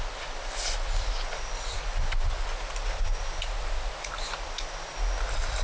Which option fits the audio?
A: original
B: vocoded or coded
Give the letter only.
A